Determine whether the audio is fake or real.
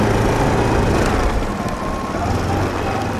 real